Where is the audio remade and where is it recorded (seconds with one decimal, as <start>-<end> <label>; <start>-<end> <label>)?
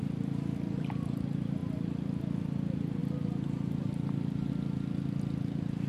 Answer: 0.0-5.9 recorded